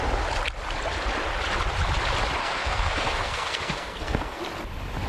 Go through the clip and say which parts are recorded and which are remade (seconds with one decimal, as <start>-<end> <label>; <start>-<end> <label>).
0.0-2.4 recorded; 2.4-4.4 remade; 4.4-5.1 recorded